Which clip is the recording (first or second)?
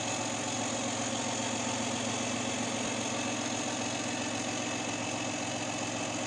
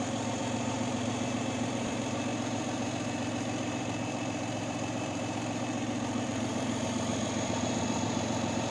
first